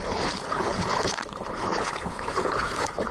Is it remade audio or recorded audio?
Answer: remade